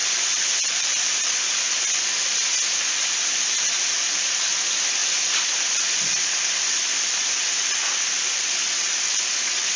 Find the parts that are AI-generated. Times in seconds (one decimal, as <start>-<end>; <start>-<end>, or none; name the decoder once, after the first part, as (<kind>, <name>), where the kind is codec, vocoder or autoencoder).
0.0-1.6 (vocoder, BigVGAN v2); 5.0-7.2